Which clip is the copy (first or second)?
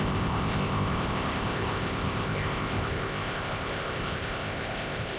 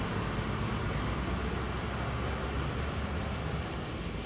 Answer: first